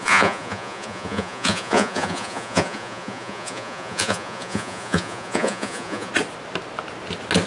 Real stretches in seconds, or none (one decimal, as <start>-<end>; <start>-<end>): 6.1-7.5